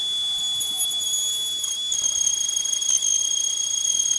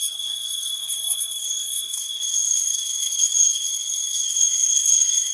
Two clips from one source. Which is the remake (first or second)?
second